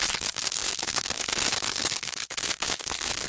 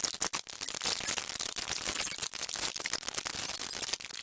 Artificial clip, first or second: first